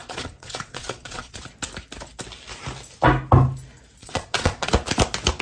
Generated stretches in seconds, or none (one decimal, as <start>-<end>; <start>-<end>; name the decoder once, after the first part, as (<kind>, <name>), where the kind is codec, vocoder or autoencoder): 0.0-1.4 (vocoder, Vocos); 4.0-4.7